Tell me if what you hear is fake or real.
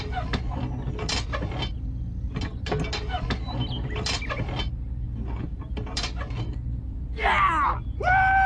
real